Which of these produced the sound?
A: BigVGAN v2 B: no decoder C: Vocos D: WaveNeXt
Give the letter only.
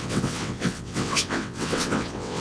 D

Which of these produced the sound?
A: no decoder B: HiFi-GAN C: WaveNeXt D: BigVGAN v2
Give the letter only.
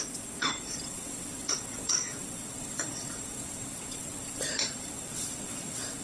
C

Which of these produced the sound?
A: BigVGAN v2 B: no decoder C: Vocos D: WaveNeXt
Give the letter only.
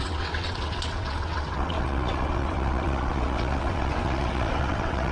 D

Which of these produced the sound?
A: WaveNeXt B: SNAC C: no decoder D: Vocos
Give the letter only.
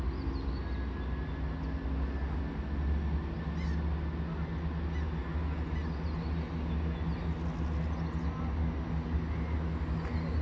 C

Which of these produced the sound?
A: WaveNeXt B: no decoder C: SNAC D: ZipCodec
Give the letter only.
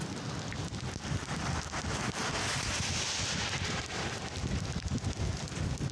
B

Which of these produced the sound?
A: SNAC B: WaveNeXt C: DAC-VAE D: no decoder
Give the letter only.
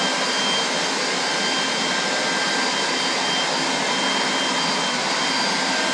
D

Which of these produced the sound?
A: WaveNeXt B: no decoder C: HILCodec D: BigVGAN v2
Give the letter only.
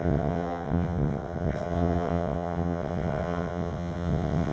A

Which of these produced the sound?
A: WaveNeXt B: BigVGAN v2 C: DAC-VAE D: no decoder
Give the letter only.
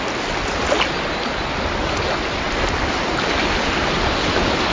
D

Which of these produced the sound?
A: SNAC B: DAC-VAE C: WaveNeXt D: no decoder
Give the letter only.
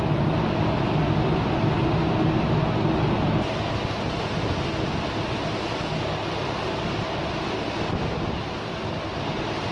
D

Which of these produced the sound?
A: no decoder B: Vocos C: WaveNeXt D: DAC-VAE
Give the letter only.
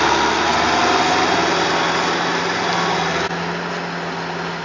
A